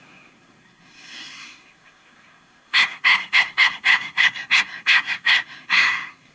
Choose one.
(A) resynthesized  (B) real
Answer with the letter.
A